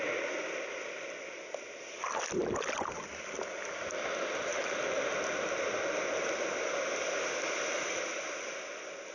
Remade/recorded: recorded